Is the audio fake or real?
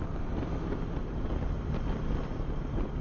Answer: real